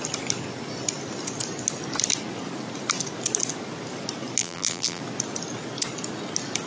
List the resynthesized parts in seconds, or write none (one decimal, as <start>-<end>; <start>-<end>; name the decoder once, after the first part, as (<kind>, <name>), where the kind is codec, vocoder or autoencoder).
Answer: 4.4-5.0 (vocoder, BigVGAN v2)